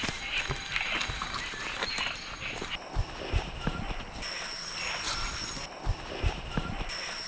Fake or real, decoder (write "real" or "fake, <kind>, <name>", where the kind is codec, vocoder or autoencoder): real